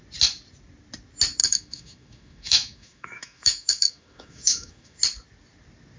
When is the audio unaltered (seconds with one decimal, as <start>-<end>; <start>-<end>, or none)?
0.0-1.4; 5.0-6.0